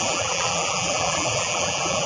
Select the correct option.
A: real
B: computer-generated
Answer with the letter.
B